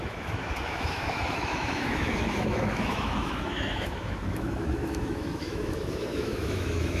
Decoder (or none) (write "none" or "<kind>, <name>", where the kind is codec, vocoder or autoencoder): autoencoder, DAC-VAE